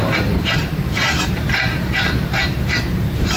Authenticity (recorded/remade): remade